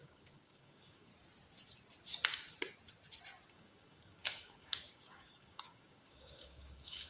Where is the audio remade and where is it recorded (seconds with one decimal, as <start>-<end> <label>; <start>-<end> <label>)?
0.0-1.1 remade; 1.1-3.5 recorded; 3.5-7.1 remade